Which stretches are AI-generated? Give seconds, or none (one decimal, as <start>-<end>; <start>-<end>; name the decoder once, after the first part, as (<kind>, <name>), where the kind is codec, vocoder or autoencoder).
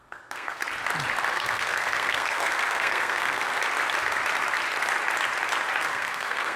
0.0-0.6 (codec, SNAC); 1.3-3.5; 5.8-6.6